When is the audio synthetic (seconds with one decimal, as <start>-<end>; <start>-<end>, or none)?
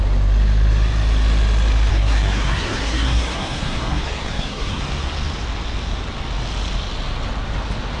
1.9-4.8